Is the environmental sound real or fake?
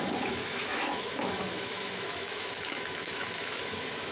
fake